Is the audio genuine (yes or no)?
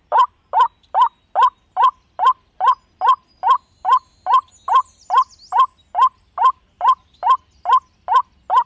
yes